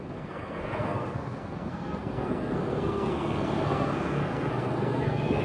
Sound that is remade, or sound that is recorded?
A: remade